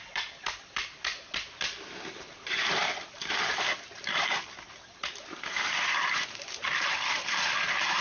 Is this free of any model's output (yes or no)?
no